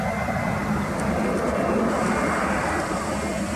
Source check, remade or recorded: recorded